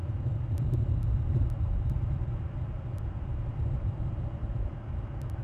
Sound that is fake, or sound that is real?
fake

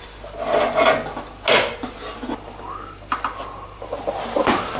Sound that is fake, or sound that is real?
real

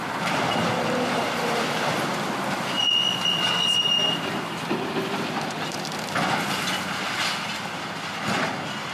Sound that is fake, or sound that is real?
real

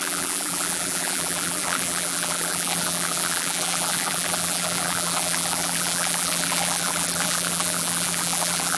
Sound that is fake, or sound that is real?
fake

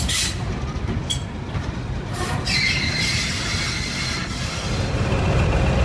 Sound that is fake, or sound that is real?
real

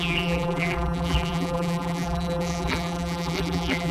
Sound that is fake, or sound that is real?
fake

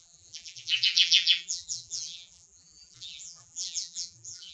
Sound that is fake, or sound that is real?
fake